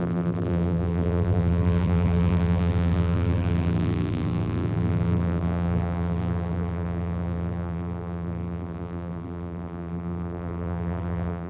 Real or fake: fake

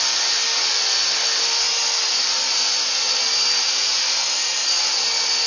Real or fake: real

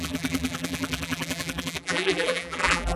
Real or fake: fake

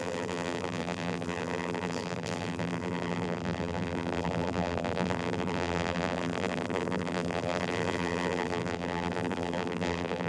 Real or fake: fake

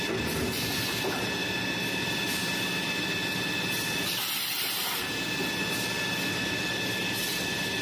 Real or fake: real